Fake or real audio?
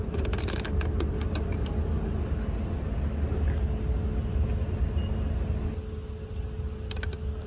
real